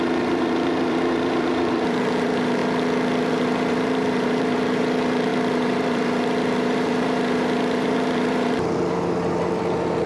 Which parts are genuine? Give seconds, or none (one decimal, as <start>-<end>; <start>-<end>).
2.6-3.3

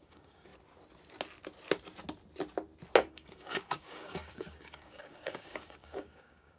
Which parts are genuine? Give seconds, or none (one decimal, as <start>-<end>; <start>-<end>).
0.5-3.1

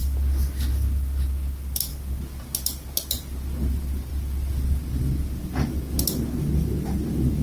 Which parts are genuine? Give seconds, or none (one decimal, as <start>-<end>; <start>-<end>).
0.0-7.4

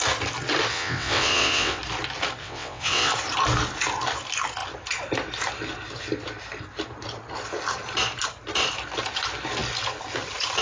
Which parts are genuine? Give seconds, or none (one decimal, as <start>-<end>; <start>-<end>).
0.0-0.7; 1.8-2.4; 3.1-10.6

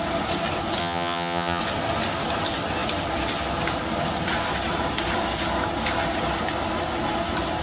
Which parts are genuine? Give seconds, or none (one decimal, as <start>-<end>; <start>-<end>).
0.0-0.8; 1.6-7.6

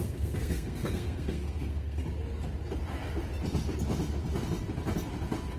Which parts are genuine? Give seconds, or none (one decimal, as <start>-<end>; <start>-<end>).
2.0-5.6